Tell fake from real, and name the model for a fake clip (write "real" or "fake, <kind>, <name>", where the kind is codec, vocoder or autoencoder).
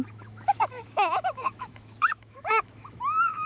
fake, autoencoder, DAC-VAE